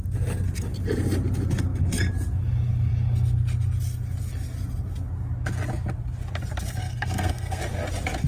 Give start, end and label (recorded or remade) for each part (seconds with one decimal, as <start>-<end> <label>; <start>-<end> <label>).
0.0-6.8 recorded; 6.8-7.6 remade; 7.6-8.3 recorded